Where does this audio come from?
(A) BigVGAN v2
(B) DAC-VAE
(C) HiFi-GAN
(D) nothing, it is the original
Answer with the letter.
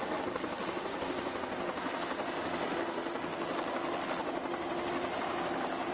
D